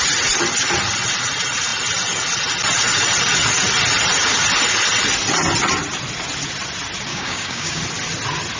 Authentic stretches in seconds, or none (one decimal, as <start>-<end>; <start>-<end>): 0.0-7.1; 7.8-8.6